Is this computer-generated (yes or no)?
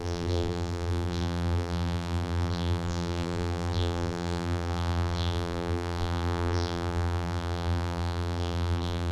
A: yes